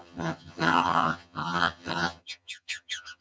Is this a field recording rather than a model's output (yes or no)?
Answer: no